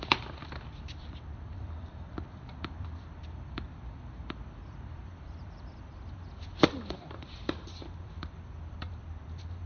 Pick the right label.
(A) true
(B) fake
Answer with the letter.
B